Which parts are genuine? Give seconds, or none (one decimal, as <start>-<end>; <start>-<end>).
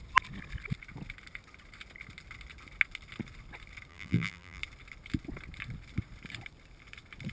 0.0-3.9; 4.6-7.3